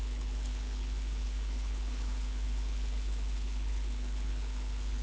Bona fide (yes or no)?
no